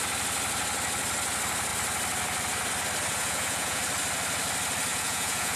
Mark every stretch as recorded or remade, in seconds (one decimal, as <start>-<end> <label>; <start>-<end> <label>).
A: 0.0-3.1 recorded; 3.1-3.8 remade; 3.8-4.9 recorded; 4.9-5.6 remade